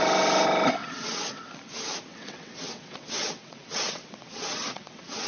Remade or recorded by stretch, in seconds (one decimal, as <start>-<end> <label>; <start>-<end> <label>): 0.0-0.8 recorded; 0.8-1.5 remade; 1.5-2.1 recorded; 2.1-5.3 remade